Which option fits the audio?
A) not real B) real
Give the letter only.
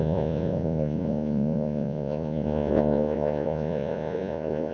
A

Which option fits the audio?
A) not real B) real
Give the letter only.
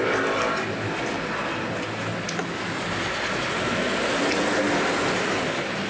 B